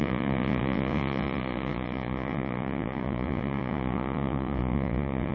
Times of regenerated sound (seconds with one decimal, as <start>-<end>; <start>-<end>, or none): 0.0-5.3